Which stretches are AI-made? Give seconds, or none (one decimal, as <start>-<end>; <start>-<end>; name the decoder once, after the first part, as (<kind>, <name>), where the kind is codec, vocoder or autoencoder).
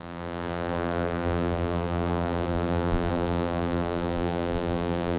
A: 0.0-5.2 (vocoder, BigVGAN v2)